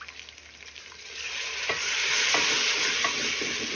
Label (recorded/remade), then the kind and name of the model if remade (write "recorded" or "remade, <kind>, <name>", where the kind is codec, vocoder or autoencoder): recorded